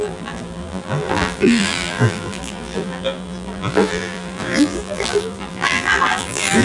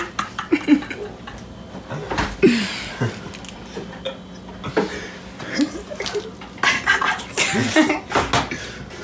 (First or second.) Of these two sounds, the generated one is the first